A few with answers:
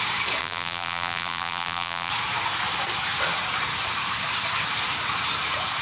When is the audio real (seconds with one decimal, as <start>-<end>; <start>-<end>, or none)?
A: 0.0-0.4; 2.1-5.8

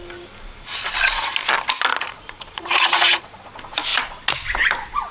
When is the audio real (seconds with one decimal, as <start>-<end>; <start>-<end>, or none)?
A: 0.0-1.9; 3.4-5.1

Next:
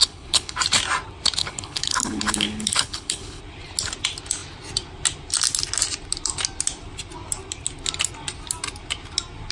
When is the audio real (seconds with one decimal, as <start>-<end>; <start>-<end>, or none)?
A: 0.6-1.4; 3.4-9.5